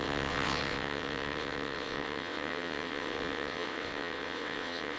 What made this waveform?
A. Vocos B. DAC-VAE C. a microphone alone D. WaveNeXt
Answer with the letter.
D